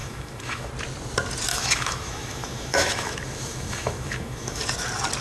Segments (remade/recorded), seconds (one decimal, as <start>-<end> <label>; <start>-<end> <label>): 0.0-0.7 remade; 0.7-1.5 recorded; 1.5-4.6 remade; 4.6-5.2 recorded